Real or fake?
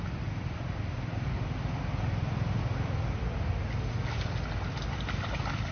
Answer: real